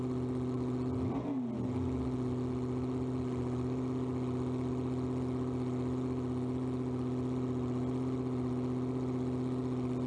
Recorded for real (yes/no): yes